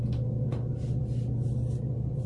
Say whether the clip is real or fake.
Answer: real